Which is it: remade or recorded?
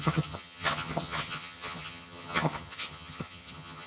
remade